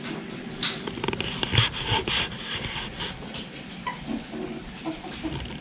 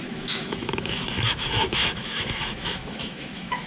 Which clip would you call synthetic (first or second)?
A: second